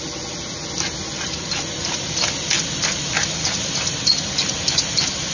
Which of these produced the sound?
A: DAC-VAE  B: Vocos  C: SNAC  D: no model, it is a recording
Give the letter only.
D